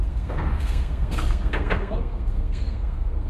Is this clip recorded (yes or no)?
no